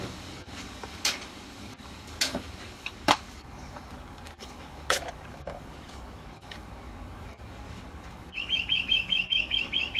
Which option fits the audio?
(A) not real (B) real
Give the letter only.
A